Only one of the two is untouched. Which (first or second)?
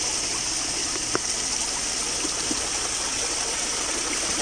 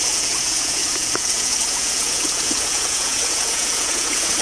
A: first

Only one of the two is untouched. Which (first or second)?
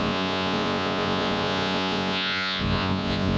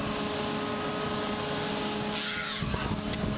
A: second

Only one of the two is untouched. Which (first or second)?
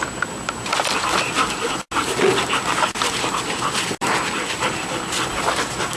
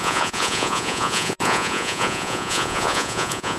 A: first